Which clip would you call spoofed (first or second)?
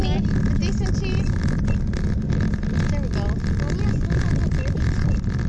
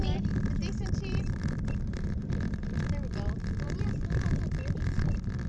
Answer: second